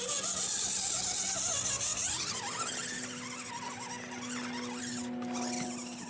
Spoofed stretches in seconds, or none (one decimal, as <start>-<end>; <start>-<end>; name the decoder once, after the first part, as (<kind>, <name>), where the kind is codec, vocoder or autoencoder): none